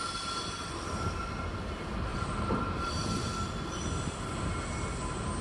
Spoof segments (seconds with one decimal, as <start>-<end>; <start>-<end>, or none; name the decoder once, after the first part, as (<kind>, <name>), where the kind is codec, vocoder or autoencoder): 2.1-2.6 (vocoder, BigVGAN v2)